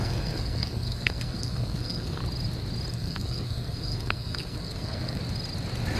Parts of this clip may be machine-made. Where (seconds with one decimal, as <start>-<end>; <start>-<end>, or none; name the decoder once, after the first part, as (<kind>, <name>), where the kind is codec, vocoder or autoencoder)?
0.0-2.2 (codec, SNAC); 2.9-5.2